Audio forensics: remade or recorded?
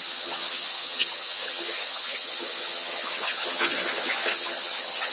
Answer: remade